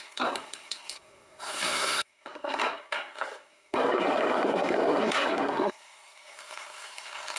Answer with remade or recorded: remade